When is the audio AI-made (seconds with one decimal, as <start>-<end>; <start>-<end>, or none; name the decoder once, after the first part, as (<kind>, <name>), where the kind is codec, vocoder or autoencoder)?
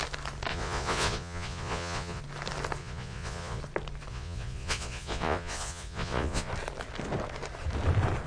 0.5-2.2 (vocoder, Vocos); 2.8-3.6; 4.1-6.5